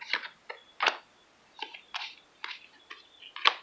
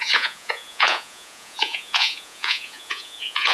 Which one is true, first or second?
first